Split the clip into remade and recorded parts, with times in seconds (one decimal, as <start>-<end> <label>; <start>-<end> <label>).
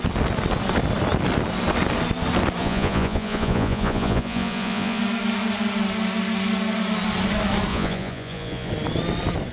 0.0-2.6 recorded; 2.6-5.0 remade; 5.0-7.7 recorded; 7.7-8.7 remade; 8.7-9.5 recorded